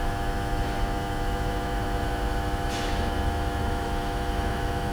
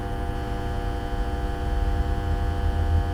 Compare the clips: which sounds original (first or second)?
second